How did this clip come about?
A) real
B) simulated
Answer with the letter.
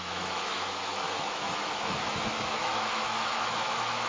B